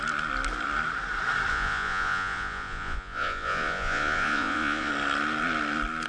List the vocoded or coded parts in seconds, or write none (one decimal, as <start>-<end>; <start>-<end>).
1.5-4.9